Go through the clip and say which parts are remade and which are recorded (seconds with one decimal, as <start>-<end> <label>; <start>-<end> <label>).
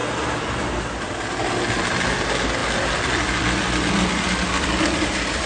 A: 0.0-2.6 recorded; 2.6-5.5 remade